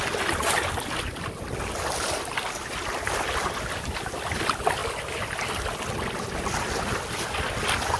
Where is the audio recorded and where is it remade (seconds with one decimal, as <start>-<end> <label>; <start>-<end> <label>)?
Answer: 0.0-8.0 recorded